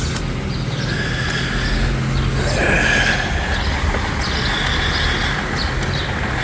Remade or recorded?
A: recorded